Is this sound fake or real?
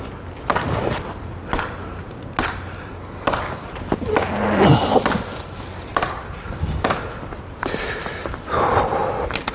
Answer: real